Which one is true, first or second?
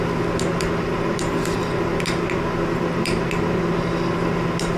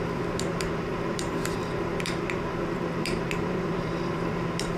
first